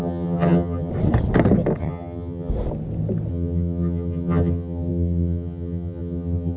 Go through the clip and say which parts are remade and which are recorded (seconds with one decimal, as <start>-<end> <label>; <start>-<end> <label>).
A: 0.0-0.9 remade; 0.9-1.8 recorded; 1.8-2.5 remade; 2.5-3.3 recorded; 3.3-6.6 remade